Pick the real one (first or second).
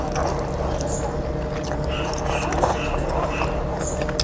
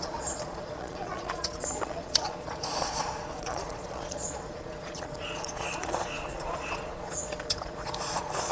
first